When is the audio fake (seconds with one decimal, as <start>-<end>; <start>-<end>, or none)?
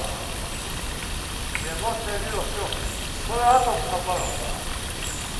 none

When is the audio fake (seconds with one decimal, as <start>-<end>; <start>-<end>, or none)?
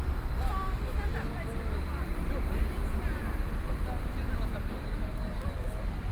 4.5-6.1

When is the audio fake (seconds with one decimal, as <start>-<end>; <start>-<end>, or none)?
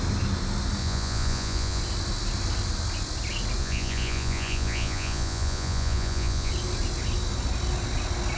0.8-1.8; 3.6-6.5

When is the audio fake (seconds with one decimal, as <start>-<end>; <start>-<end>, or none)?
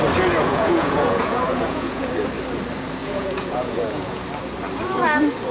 0.5-2.1; 3.0-4.2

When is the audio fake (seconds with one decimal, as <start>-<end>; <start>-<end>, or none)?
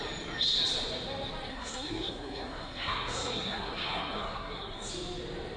1.5-4.9